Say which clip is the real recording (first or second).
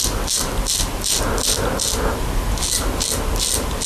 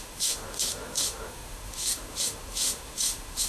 first